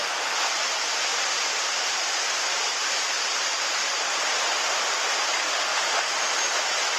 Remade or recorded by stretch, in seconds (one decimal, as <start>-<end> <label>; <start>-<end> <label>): 0.0-1.1 recorded; 1.1-4.2 remade; 4.2-7.0 recorded